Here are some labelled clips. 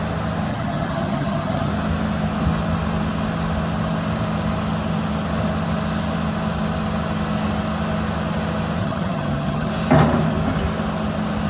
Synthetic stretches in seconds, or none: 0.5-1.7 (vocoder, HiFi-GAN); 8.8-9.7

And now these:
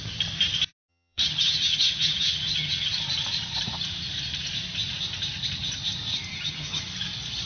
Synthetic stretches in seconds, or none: 0.9-3.0 (vocoder, HiFi-GAN); 6.3-6.8

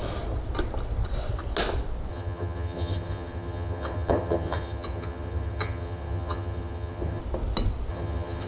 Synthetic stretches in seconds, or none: 2.1-7.2 (vocoder, HiFi-GAN); 7.9-8.5

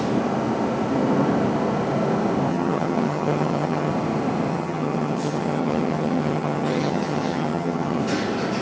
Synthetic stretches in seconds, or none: 2.5-3.9 (vocoder, HiFi-GAN); 4.5-8.0